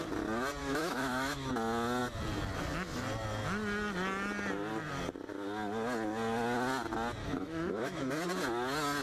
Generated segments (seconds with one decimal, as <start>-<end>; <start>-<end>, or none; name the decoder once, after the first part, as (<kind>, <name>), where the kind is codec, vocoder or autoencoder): 0.6-1.5 (autoencoder, DAC-VAE); 7.2-8.0